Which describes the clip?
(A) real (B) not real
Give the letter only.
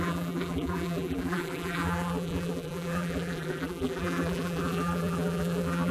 B